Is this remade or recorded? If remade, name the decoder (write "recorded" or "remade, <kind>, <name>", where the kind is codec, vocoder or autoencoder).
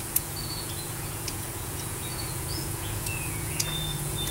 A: remade, vocoder, Vocos